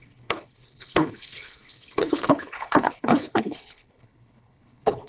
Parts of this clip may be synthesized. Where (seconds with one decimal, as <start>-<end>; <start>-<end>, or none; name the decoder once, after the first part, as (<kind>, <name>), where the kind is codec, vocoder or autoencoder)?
0.0-5.1 (codec, HILCodec)